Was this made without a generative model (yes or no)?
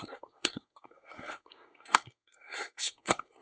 no